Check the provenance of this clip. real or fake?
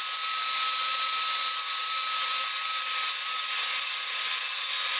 real